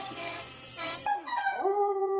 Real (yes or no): no